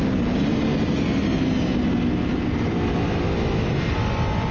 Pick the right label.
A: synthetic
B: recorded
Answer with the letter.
B